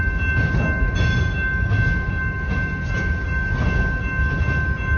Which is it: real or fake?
real